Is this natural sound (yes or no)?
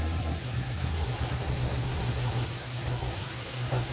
no